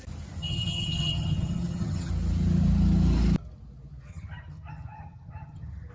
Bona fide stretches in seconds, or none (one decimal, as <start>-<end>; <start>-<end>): 0.0-0.4; 2.1-4.1